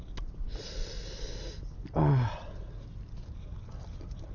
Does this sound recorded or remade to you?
recorded